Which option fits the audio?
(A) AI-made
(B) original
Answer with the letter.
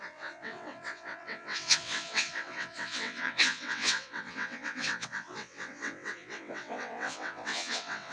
A